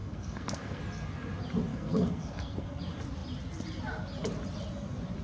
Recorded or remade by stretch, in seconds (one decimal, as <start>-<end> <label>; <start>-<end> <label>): 0.0-0.8 remade; 0.8-1.7 recorded; 1.7-2.8 remade; 2.8-5.2 recorded